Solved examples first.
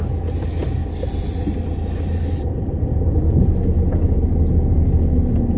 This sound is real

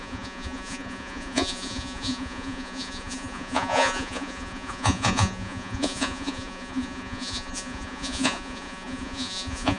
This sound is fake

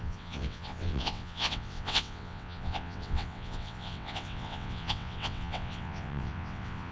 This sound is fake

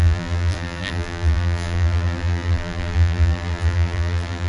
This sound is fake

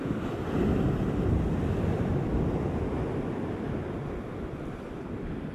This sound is fake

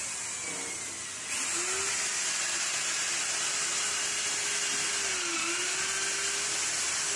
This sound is real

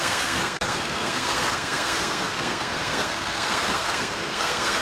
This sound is fake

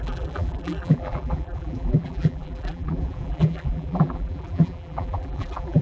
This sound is fake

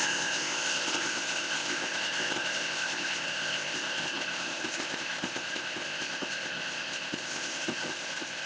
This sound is fake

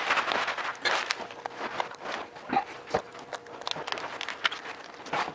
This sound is real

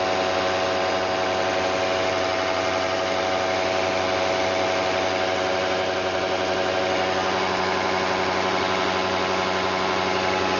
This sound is real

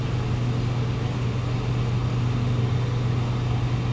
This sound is real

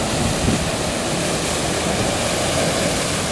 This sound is real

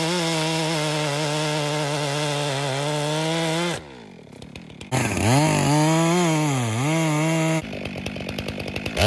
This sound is real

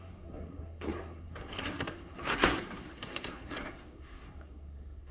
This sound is fake